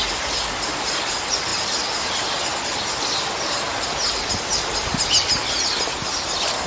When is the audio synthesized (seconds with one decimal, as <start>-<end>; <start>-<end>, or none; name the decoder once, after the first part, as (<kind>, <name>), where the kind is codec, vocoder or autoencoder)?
none